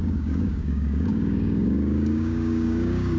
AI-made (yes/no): yes